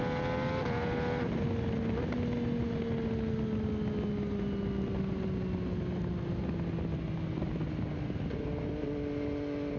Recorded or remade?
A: recorded